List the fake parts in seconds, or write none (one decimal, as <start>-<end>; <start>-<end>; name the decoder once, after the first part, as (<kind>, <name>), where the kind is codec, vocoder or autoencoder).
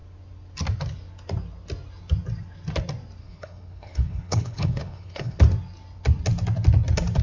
3.2-5.4 (codec, HILCodec)